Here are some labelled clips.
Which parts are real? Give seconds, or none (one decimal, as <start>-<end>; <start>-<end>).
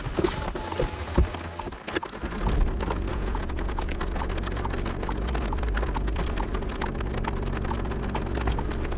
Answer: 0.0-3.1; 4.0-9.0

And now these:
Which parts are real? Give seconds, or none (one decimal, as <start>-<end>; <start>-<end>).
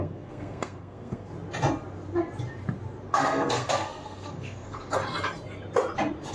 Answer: 1.3-3.1; 5.0-6.3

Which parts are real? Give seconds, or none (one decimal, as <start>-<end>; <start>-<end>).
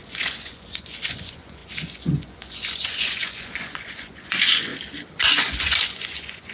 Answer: 4.7-5.3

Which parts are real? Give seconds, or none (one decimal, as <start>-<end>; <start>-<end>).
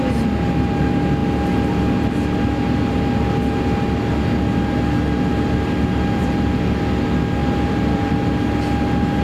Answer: 0.0-5.3; 6.5-7.4; 8.1-9.2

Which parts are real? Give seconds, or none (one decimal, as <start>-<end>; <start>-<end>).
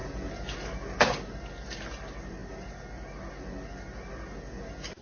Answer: 0.0-5.0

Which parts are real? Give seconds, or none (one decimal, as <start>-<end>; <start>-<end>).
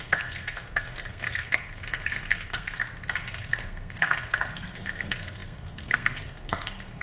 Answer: 2.8-3.4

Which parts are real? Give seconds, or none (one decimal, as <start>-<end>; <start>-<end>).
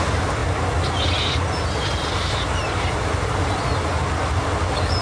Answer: 0.0-5.0